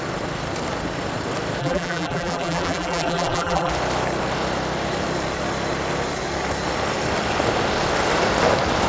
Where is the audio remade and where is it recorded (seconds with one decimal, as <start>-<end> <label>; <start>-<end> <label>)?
0.0-1.6 recorded; 1.6-3.7 remade; 3.7-8.9 recorded